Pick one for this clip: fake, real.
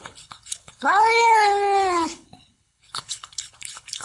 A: fake